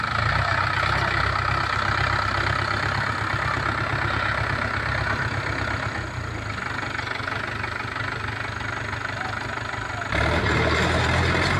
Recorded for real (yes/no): yes